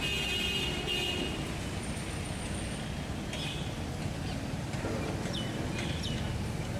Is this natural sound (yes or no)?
yes